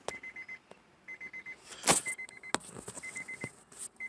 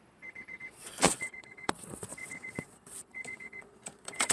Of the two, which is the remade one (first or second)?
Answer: second